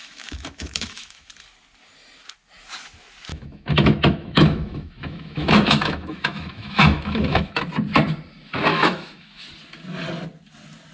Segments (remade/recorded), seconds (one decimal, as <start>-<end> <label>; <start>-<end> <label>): 0.0-1.3 remade; 1.3-3.3 recorded; 3.3-7.6 remade; 7.6-8.7 recorded; 8.7-9.4 remade; 9.4-10.9 recorded